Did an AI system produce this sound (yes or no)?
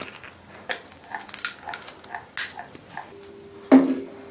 no